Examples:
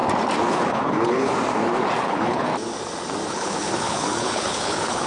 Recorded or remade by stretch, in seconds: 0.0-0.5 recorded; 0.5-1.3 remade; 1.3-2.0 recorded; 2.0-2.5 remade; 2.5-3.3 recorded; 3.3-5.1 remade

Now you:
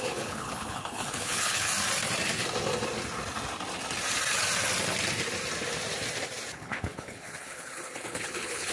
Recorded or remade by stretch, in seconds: 0.0-1.7 remade; 1.7-6.5 recorded; 6.5-8.7 remade

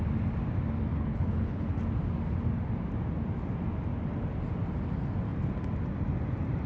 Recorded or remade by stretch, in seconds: 0.0-0.9 recorded; 0.9-1.8 remade; 1.8-6.7 recorded

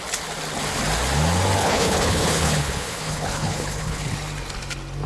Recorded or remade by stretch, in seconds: 0.0-1.6 recorded; 1.6-4.1 remade; 4.1-5.1 recorded

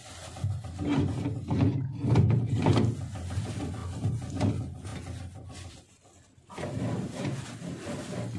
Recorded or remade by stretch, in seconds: 0.0-8.4 recorded

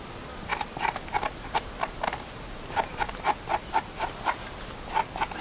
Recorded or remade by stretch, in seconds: 0.0-5.4 recorded